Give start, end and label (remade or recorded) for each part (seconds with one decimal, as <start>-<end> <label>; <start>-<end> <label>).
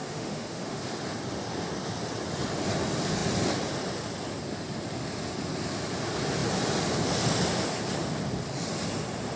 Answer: 0.0-0.8 remade; 0.8-9.4 recorded